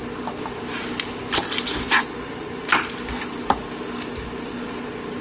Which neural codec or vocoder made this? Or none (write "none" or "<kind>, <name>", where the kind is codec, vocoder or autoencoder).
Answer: none